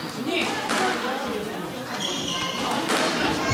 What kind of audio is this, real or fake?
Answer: real